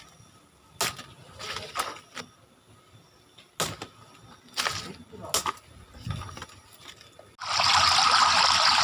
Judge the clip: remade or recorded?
recorded